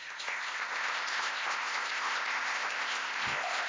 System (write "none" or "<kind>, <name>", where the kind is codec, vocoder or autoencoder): codec, ZipCodec